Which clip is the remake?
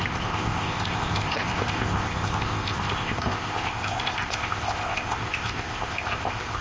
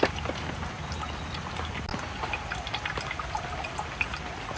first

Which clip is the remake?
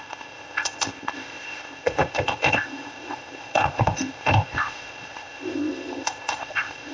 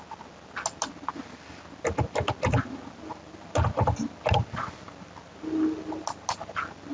first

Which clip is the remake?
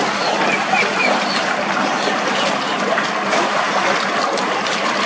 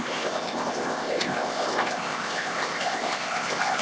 second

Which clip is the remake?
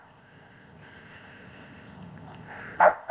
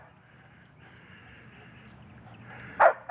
first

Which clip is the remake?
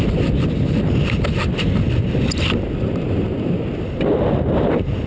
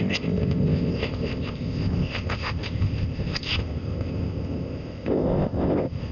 second